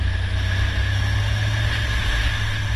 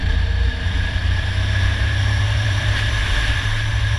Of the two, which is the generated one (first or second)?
second